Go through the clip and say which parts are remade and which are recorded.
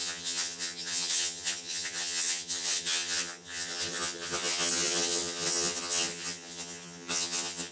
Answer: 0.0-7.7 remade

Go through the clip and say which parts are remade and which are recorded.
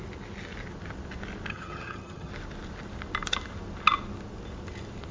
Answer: 0.0-1.5 recorded; 1.5-2.3 remade; 2.3-5.1 recorded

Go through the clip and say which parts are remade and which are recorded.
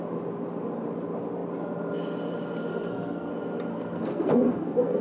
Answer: 0.0-2.7 recorded; 2.7-3.3 remade; 3.3-3.7 recorded; 3.7-5.0 remade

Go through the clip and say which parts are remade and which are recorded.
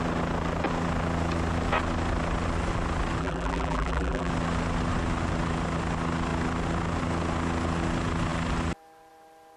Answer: 0.0-3.2 recorded; 3.2-4.3 remade; 4.3-9.6 recorded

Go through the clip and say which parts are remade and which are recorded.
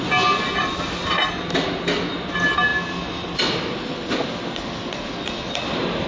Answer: 0.0-6.1 recorded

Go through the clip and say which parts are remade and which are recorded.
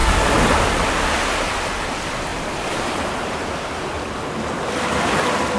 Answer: 0.0-2.3 recorded; 2.3-3.9 remade; 3.9-5.6 recorded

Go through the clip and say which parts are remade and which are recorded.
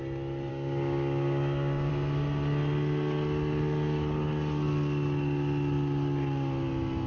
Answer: 0.0-0.5 recorded; 0.5-1.9 remade; 1.9-7.1 recorded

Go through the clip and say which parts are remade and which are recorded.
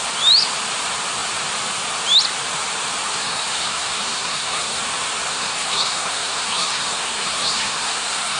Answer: 0.0-3.1 recorded; 3.1-4.8 remade; 4.8-5.3 recorded; 5.3-8.4 remade